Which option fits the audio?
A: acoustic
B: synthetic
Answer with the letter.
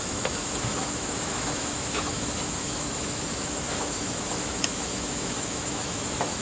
B